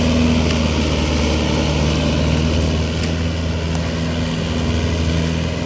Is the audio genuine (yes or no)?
yes